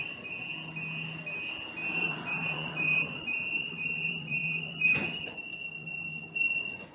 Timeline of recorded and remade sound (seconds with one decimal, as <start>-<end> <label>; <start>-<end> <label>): 0.0-0.5 remade; 0.5-1.9 recorded; 1.9-6.9 remade